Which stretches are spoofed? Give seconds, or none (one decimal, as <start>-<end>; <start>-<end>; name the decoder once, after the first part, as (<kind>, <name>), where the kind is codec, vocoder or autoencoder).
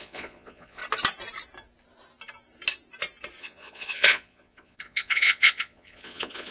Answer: 0.0-0.8 (vocoder, Vocos); 3.4-6.5